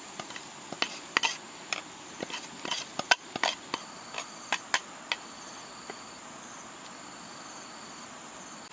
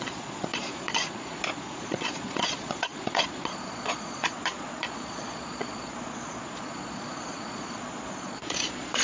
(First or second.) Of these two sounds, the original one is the first